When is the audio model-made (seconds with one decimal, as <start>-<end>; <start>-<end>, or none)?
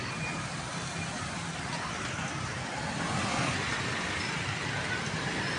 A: none